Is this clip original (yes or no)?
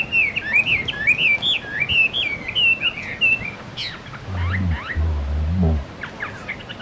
yes